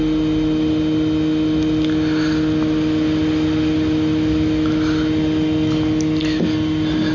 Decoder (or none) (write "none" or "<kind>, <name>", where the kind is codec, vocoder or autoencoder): none